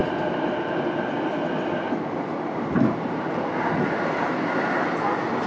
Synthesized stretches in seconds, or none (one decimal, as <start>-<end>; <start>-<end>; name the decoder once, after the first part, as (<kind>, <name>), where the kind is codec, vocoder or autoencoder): none